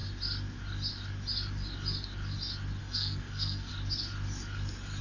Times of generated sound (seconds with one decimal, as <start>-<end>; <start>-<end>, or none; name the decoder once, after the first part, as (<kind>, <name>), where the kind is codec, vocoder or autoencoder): 2.8-3.7 (codec, SNAC)